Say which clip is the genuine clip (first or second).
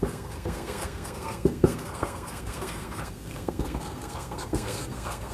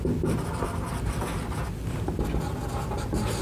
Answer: second